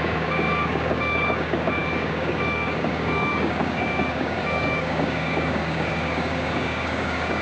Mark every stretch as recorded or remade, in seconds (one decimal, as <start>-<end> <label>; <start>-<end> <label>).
0.0-7.4 remade